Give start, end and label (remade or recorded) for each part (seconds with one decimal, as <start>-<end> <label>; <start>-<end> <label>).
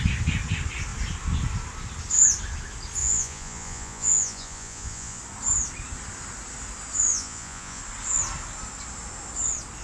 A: 0.0-3.0 recorded; 3.0-5.2 remade; 5.2-7.1 recorded; 7.1-7.8 remade; 7.8-9.8 recorded